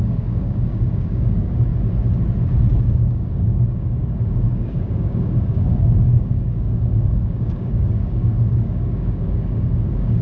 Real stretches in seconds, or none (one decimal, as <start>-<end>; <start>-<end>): 1.7-2.8